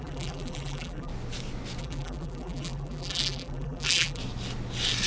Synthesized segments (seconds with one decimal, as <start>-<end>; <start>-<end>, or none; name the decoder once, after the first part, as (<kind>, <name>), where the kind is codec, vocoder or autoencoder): 0.0-1.1 (vocoder, BigVGAN v2); 1.8-4.2